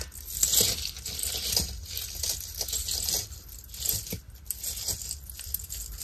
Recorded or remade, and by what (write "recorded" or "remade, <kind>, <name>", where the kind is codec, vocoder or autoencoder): recorded